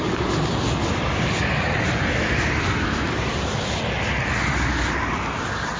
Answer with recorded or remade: recorded